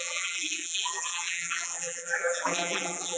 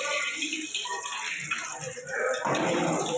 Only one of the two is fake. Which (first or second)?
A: first